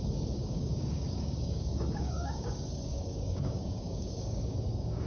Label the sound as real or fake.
fake